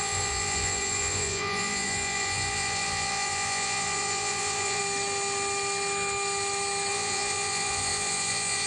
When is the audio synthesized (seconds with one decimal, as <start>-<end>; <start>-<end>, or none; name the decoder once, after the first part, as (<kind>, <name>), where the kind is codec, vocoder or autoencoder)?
0.0-4.8 (vocoder, Vocos); 6.9-8.7